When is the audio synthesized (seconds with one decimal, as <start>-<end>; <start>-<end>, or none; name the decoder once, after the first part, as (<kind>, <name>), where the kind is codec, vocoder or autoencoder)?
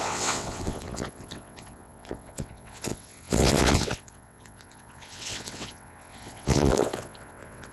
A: 0.0-7.7 (vocoder, WaveNeXt)